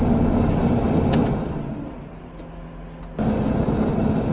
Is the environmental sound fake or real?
real